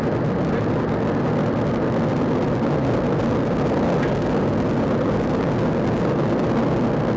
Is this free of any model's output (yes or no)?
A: yes